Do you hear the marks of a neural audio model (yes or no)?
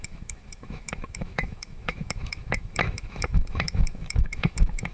yes